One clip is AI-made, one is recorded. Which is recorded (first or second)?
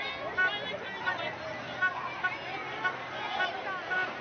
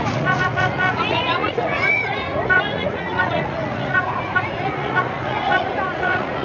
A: first